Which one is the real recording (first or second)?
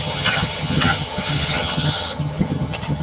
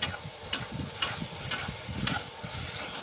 second